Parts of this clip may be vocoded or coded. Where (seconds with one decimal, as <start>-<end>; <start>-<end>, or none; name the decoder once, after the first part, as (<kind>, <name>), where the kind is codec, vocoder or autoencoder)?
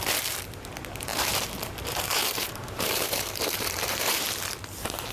1.1-4.2 (vocoder, BigVGAN v2)